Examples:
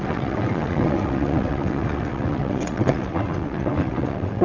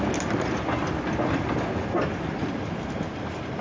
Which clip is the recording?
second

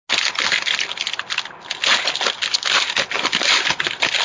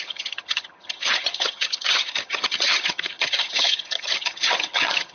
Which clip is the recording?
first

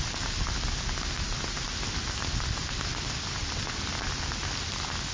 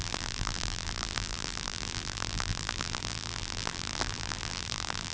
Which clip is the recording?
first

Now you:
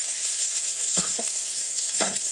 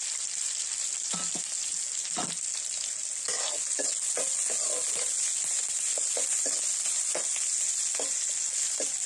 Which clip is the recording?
second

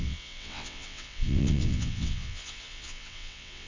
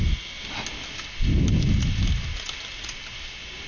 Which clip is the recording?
second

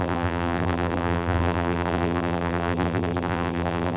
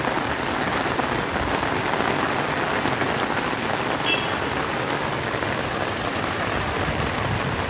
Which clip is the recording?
second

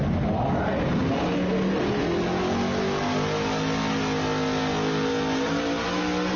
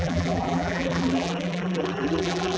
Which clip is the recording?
first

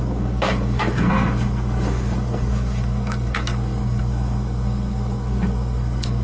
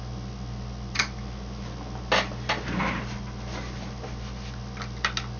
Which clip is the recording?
second